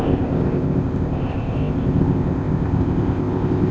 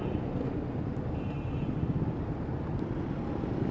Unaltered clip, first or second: second